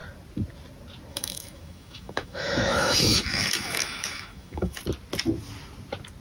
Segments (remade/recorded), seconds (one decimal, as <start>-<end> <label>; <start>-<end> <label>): 0.0-1.1 recorded; 1.1-4.8 remade; 4.8-6.2 recorded